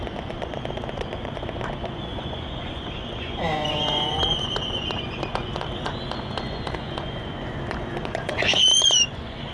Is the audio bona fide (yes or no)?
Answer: no